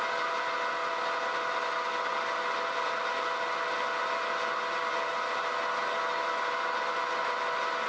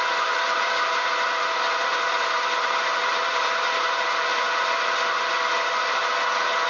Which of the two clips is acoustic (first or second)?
first